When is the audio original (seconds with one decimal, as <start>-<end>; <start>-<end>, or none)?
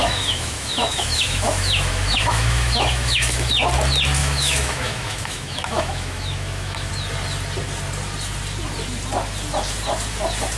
3.5-4.2; 6.9-10.6